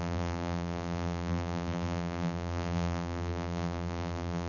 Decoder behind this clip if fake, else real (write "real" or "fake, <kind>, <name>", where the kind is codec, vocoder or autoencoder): fake, vocoder, BigVGAN v2